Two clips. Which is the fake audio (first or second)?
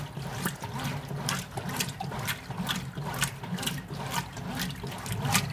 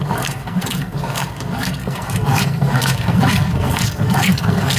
second